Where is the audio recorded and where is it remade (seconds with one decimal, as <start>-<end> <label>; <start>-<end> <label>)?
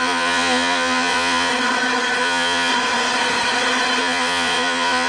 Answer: 0.0-1.5 remade; 1.5-2.2 recorded; 2.2-2.7 remade; 2.7-4.0 recorded; 4.0-5.1 remade